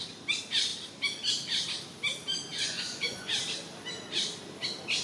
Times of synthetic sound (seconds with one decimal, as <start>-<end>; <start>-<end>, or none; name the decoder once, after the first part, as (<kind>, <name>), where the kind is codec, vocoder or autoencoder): 2.5-3.4 (vocoder, Vocos)